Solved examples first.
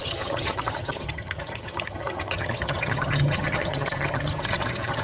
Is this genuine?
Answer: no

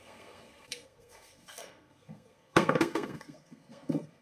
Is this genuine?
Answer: no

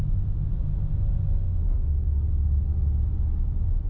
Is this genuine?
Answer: yes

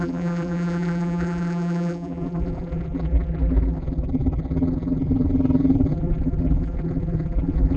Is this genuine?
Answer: no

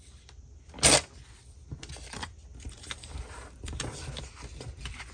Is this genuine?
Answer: yes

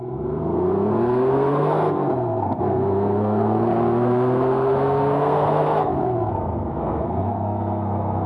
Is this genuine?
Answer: no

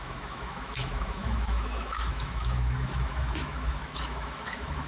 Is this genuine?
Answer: no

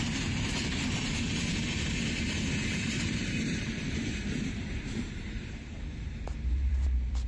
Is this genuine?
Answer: no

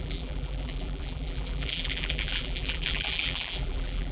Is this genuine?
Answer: no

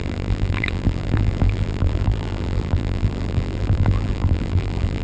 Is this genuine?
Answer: no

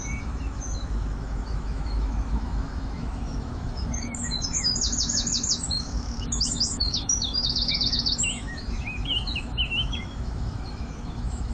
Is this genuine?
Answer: no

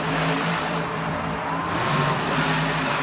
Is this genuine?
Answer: no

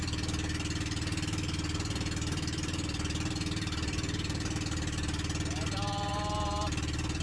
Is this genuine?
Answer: no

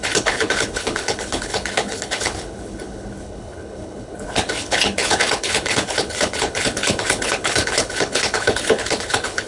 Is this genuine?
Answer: no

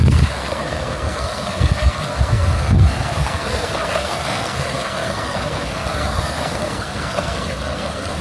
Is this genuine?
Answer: no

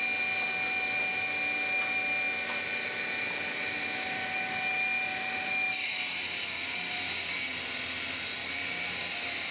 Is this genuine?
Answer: yes